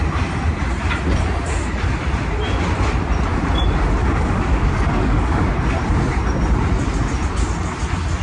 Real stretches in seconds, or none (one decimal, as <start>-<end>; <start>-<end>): 0.0-4.0; 5.5-8.2

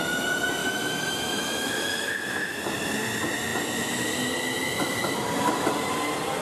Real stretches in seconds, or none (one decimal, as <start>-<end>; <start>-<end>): 0.0-0.6; 2.6-6.4

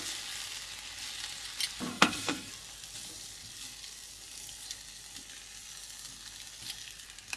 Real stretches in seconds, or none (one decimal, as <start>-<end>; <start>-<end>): 0.0-1.9; 2.5-7.4